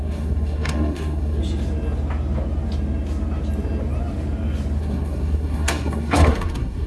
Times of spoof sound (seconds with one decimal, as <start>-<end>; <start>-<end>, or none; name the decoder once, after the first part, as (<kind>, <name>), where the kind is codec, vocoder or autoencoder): 0.0-1.4 (codec, SNAC); 4.8-6.9